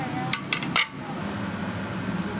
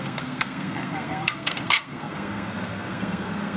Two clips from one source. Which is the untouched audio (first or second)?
first